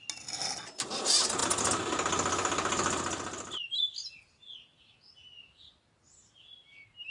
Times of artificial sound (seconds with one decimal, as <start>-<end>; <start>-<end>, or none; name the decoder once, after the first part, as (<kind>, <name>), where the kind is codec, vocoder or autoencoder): none